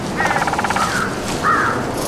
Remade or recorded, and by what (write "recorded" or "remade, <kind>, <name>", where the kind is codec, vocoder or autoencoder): recorded